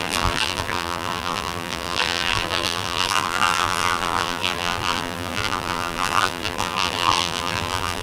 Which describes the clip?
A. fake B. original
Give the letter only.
A